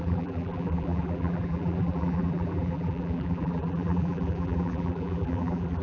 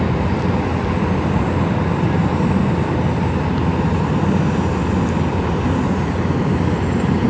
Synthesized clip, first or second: first